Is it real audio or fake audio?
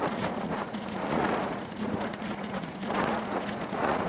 fake